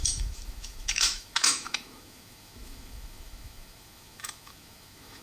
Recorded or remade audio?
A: remade